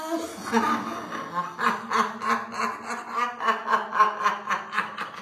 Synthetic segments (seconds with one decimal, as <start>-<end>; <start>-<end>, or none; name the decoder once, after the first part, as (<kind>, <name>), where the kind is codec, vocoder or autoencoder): none